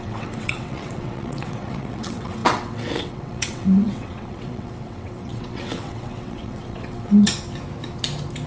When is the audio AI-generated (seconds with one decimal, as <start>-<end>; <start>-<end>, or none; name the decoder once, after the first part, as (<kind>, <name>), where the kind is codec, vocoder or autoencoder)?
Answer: 0.0-7.3 (vocoder, WaveNeXt)